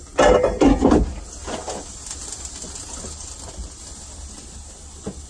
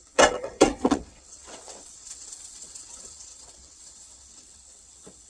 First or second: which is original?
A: first